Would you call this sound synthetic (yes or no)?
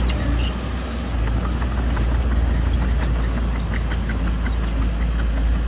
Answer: no